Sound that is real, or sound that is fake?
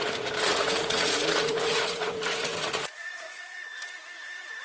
fake